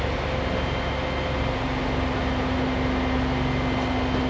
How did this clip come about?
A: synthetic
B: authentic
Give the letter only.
B